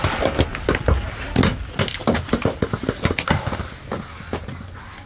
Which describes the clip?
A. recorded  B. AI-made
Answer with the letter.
A